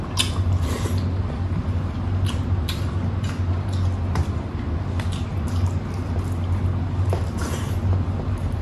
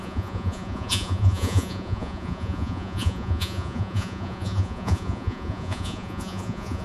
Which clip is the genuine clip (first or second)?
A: first